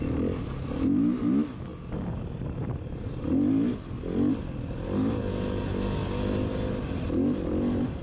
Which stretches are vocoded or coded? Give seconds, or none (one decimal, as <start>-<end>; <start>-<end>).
none